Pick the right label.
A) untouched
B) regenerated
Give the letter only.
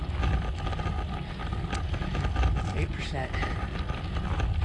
A